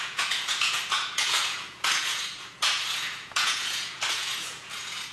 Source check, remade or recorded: remade